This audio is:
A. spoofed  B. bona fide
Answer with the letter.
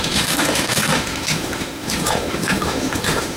A